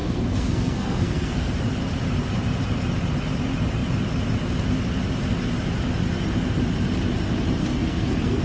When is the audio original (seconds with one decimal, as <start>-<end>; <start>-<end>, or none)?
1.5-7.6